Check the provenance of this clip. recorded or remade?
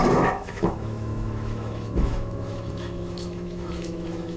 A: remade